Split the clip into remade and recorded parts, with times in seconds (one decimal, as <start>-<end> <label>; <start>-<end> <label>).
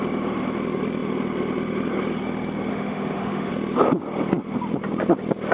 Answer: 0.0-2.7 recorded; 2.7-3.5 remade; 3.5-5.5 recorded